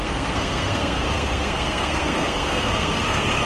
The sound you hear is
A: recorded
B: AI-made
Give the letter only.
B